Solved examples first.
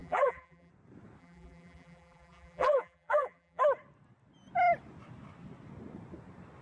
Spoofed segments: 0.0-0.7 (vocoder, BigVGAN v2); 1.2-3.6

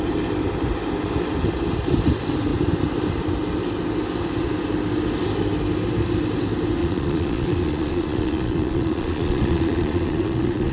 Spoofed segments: 6.8-10.7 (vocoder, Vocos)

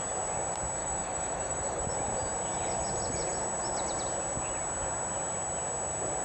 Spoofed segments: 0.8-1.8 (autoencoder, DAC-VAE)

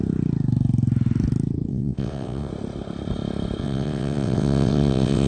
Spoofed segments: 1.7-2.5 (vocoder, WaveNeXt); 3.6-5.3